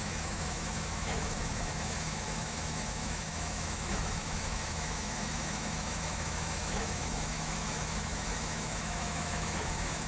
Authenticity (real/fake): fake